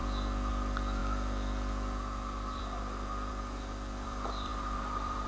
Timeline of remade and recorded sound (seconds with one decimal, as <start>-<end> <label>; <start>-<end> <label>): 0.0-5.3 remade